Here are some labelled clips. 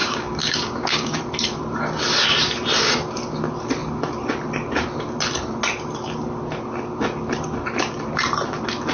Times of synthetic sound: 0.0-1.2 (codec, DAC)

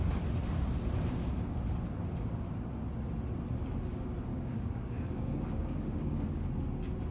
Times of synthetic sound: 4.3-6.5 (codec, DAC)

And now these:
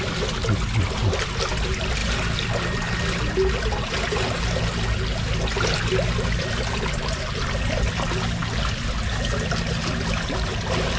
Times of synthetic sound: none

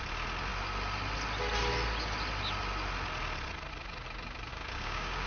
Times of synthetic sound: 4.5-5.3 (codec, DAC)

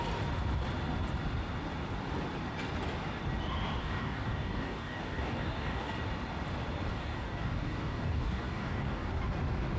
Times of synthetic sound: 3.8-5.9 (codec, DAC); 6.9-9.1